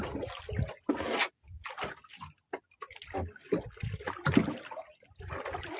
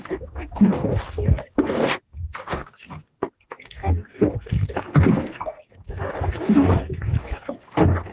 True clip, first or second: first